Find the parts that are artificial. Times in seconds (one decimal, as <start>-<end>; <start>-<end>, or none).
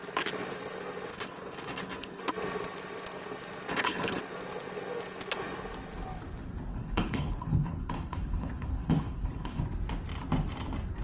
1.1-2.2; 3.7-4.2; 6.7-9.6